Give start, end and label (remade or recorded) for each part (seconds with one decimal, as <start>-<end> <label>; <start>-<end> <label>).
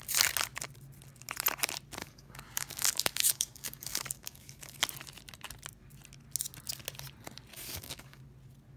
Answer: 0.0-2.0 recorded; 2.0-4.8 remade; 4.8-7.5 recorded; 7.5-8.2 remade; 8.2-8.8 recorded